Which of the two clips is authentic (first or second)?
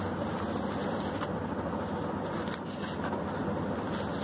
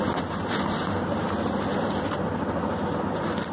first